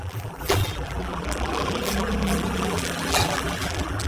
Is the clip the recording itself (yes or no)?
no